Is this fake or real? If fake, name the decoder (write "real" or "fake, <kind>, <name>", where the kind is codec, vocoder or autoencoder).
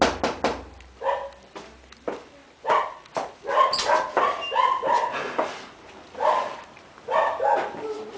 real